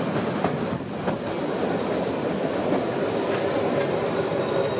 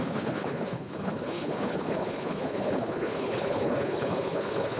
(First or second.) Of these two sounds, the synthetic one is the second